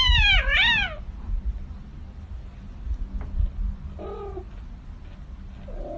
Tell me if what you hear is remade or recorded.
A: recorded